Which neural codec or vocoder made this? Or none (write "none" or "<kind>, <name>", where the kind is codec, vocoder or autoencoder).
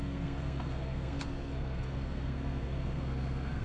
codec, SNAC